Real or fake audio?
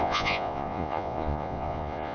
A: fake